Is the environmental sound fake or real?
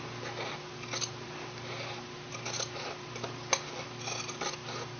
real